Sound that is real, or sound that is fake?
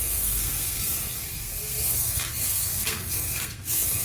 fake